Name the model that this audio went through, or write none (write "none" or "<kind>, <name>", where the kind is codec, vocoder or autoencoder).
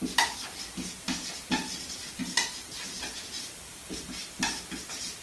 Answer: none